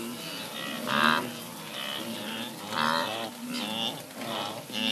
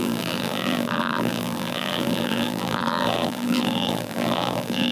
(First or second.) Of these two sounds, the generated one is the second